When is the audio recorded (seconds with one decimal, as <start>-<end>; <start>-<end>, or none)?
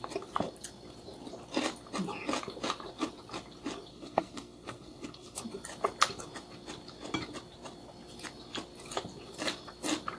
0.0-3.9; 5.4-10.2